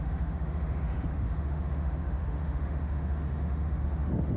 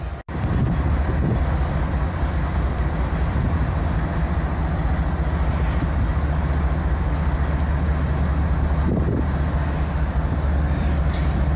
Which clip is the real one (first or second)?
second